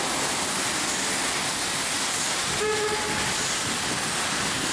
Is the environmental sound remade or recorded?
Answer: recorded